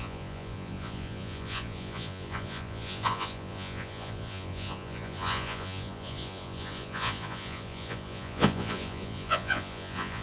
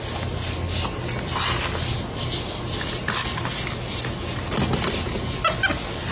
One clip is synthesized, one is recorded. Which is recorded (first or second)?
second